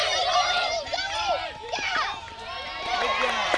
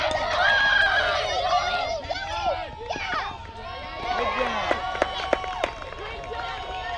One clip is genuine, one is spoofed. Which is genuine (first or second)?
second